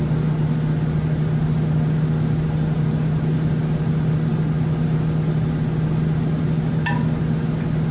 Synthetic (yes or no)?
no